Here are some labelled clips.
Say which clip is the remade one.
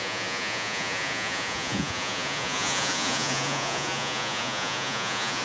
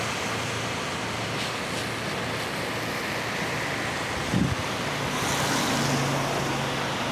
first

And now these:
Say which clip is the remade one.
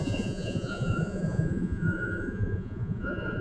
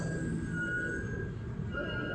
first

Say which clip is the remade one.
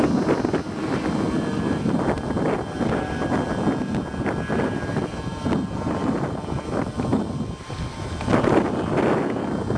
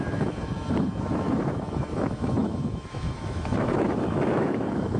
second